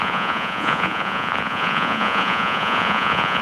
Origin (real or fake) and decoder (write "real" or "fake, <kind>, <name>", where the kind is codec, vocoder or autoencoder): fake, vocoder, Vocos